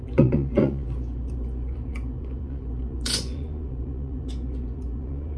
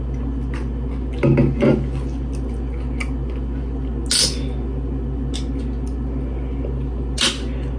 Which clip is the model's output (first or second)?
first